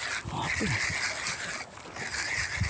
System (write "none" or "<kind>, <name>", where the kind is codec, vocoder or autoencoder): none